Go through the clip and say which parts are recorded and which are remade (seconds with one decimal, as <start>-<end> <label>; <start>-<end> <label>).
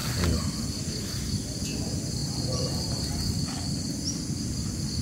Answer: 0.0-2.2 recorded; 2.2-3.1 remade; 3.1-5.0 recorded